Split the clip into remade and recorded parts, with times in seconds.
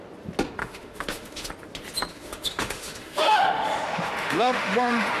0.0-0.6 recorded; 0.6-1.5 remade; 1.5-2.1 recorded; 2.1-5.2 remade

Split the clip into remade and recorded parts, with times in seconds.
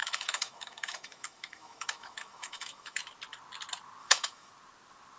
0.0-3.0 remade; 3.0-4.0 recorded; 4.0-4.5 remade; 4.5-5.2 recorded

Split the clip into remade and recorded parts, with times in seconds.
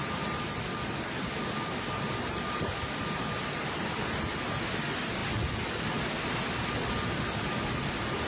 0.0-8.3 recorded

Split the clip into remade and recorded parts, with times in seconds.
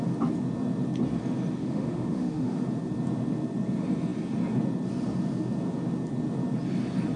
0.0-1.6 recorded; 1.6-2.6 remade; 2.6-7.2 recorded